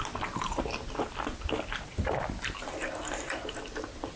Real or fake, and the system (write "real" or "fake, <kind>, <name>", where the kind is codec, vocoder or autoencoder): real